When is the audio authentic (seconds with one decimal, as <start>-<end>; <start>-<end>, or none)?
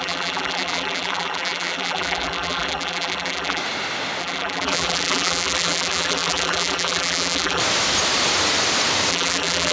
3.6-4.2; 7.6-9.1